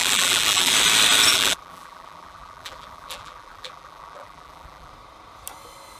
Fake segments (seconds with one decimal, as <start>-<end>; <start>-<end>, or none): 0.0-0.7; 1.3-4.9